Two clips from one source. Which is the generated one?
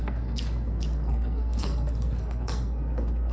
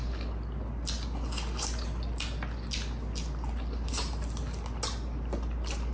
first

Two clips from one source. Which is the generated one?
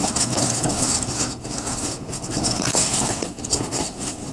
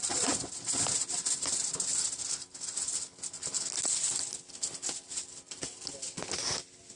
first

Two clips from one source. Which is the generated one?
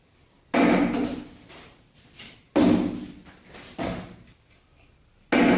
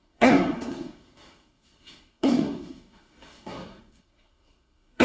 second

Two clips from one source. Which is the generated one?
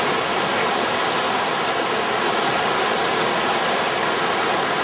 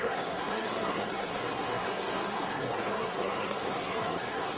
second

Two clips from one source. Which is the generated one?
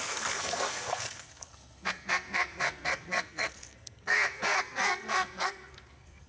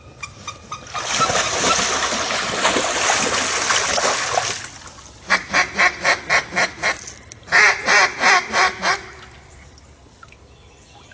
first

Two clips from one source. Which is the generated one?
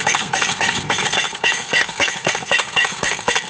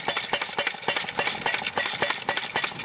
first